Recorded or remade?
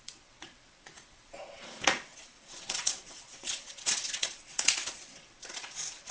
remade